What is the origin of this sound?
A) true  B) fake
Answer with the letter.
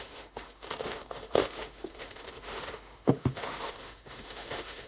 B